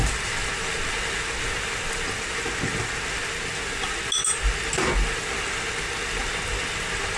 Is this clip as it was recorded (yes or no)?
yes